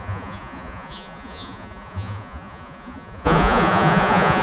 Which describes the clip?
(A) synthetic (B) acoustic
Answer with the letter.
A